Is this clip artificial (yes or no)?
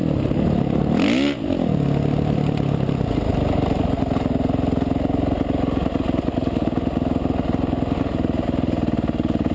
no